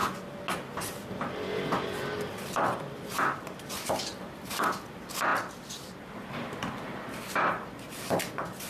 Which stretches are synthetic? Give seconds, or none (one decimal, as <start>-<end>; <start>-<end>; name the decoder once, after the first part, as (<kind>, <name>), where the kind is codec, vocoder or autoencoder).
0.5-8.7 (vocoder, BigVGAN v2)